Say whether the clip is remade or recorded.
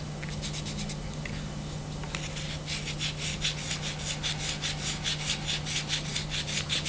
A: recorded